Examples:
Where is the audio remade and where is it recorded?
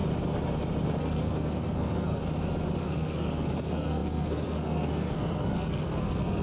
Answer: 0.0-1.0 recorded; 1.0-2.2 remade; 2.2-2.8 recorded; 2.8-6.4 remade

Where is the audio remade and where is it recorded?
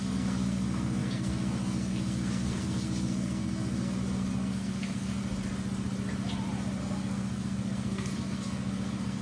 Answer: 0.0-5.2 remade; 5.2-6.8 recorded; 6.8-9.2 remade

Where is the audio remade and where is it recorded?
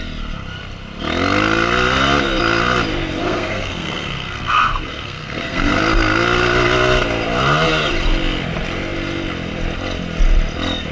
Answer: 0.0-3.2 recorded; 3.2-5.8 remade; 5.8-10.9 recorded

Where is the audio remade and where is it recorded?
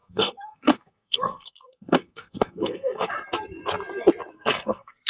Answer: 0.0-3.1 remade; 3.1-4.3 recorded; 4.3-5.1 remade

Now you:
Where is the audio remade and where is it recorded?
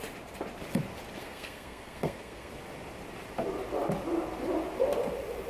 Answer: 0.0-1.2 recorded; 1.2-2.5 remade; 2.5-5.5 recorded